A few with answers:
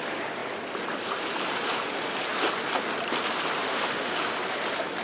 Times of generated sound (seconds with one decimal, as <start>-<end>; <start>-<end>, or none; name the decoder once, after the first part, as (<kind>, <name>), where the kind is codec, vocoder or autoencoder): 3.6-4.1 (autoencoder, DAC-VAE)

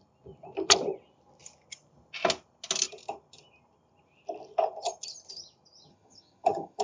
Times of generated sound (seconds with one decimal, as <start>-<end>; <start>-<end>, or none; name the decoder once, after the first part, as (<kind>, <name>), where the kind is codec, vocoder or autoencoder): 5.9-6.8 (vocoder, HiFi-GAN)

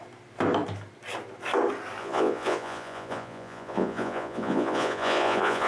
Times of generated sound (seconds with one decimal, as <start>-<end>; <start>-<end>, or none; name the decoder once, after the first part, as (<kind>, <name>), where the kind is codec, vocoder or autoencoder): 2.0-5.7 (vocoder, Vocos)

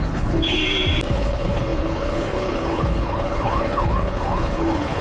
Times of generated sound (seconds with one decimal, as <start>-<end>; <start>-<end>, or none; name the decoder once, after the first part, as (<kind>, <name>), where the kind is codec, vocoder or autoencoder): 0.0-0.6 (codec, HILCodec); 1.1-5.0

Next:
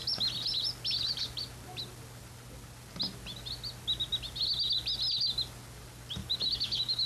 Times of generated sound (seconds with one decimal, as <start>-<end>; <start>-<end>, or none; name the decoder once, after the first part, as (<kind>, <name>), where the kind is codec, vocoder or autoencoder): 6.2-7.1 (codec, DAC)